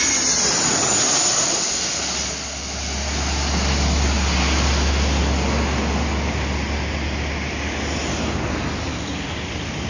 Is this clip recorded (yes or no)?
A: yes